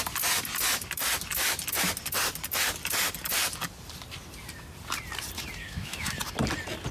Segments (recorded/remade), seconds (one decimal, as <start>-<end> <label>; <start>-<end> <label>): 0.0-5.6 recorded; 5.6-6.2 remade; 6.2-6.9 recorded